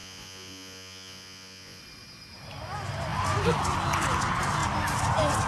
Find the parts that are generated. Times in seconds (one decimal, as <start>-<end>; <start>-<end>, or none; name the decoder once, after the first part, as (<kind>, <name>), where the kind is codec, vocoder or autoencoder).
0.0-1.8 (vocoder, Vocos)